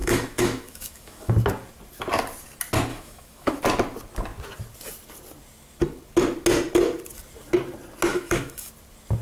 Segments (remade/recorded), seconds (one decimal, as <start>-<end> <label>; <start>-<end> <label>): 0.0-1.3 remade; 1.3-2.9 recorded; 2.9-3.6 remade; 3.6-8.1 recorded; 8.1-8.7 remade; 8.7-9.2 recorded